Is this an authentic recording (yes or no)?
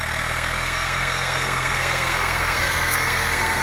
no